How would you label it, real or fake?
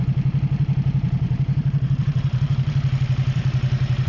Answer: fake